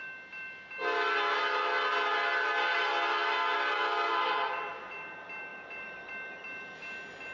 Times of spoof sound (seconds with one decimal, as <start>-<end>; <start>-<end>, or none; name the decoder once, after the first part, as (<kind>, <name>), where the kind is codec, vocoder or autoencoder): 5.5-6.1 (vocoder, BigVGAN v2)